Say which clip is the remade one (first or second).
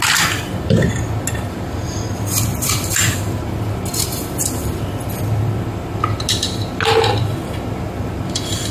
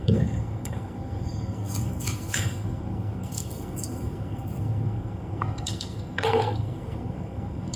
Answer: second